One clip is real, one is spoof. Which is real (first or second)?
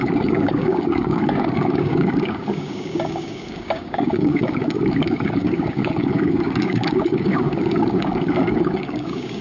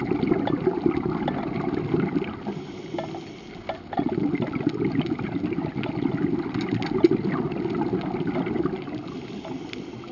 second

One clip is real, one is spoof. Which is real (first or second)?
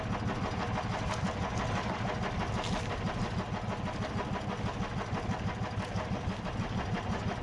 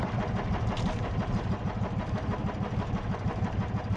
first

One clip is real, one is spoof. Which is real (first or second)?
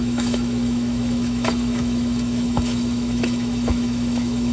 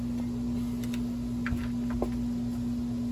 second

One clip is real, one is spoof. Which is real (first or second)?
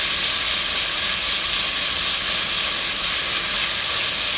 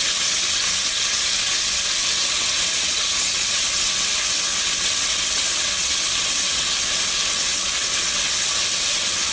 first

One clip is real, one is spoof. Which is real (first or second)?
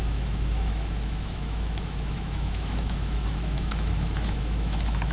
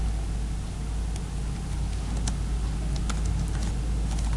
second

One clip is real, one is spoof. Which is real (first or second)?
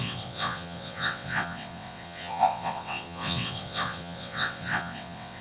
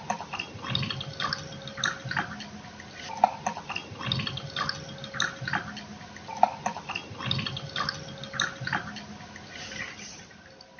second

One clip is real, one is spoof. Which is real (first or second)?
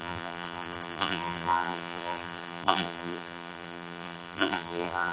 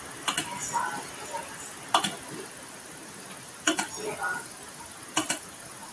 second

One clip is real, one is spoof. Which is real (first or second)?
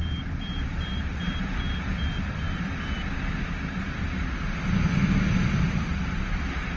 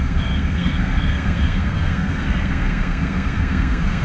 first